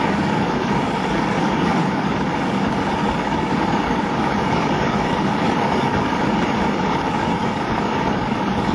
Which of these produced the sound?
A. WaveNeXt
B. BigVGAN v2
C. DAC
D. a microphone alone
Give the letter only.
C